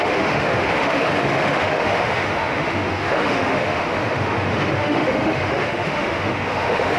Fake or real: fake